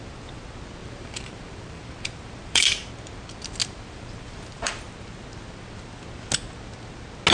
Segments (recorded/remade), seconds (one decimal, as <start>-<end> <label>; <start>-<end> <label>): 0.0-0.8 recorded; 0.8-2.9 remade; 2.9-3.6 recorded; 3.6-4.7 remade; 4.7-7.3 recorded